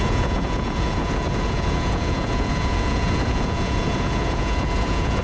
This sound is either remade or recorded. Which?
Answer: remade